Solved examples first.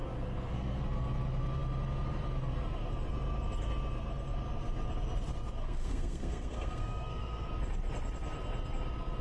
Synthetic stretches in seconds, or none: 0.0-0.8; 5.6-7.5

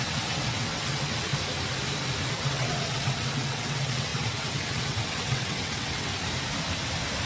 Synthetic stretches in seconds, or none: 0.0-1.3; 2.3-6.1

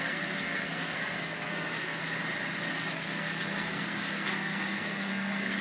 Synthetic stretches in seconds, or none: 0.0-2.0; 2.7-5.6

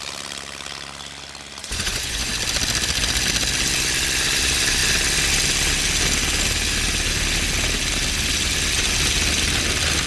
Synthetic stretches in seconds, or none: 1.6-2.3